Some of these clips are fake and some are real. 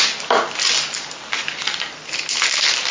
real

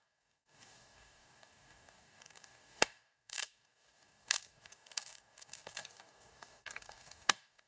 fake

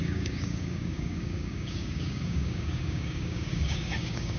fake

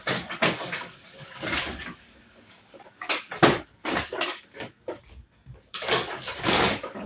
fake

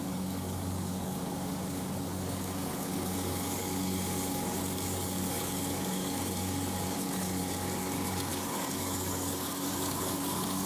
fake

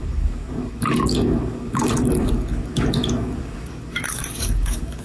fake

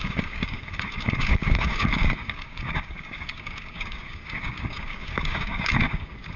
fake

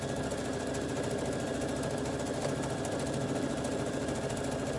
real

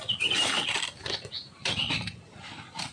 real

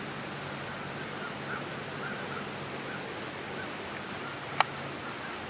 real